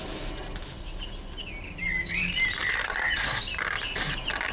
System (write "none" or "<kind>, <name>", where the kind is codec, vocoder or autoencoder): none